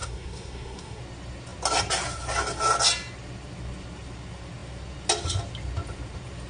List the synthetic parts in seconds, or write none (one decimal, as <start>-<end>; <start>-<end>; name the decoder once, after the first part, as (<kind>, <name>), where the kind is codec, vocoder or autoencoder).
0.0-1.0 (codec, SNAC)